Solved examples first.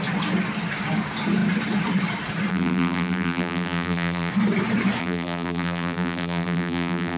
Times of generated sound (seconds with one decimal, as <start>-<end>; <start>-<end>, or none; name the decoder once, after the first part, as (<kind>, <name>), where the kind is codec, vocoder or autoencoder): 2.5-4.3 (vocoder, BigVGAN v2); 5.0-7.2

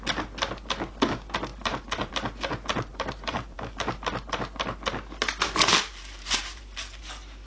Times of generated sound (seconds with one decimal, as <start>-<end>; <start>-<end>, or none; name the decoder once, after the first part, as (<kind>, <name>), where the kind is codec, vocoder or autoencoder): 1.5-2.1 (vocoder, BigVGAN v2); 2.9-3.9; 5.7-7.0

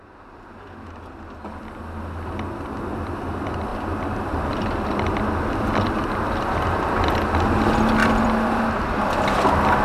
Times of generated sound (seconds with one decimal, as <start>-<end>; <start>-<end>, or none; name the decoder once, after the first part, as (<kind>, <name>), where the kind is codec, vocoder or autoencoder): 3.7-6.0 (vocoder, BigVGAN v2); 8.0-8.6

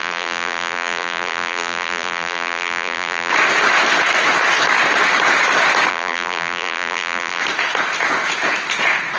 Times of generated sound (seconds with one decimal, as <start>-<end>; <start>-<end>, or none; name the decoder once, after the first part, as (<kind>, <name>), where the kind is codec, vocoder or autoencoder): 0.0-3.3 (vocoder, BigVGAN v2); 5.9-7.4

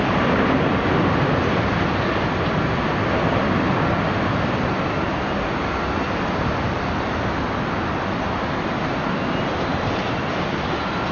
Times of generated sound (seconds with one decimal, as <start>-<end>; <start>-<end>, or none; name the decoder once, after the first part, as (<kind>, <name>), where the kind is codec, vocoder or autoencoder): 9.7-10.7 (vocoder, BigVGAN v2)